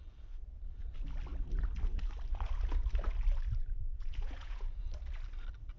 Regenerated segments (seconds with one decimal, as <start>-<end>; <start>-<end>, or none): 3.6-4.8